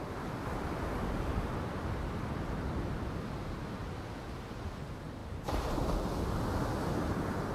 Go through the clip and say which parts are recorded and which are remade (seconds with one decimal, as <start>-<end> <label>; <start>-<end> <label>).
0.0-7.5 recorded